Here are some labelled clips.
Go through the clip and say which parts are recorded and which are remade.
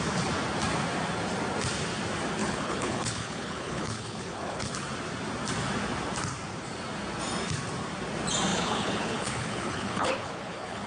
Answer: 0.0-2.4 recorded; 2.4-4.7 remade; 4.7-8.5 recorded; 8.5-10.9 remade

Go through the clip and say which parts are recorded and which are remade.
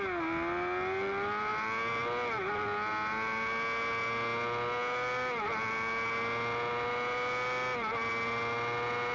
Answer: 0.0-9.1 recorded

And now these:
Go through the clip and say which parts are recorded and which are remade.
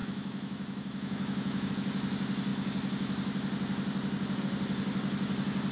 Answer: 0.0-1.7 remade; 1.7-5.7 recorded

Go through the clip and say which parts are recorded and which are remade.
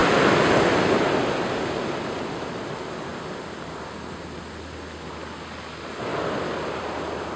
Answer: 0.0-0.7 remade; 0.7-3.1 recorded; 3.1-4.4 remade; 4.4-7.4 recorded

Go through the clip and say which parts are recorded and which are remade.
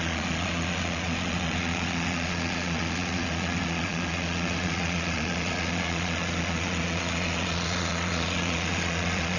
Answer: 0.0-9.4 remade